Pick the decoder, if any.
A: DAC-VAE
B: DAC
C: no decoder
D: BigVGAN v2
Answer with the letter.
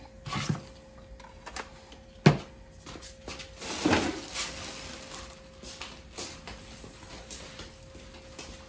C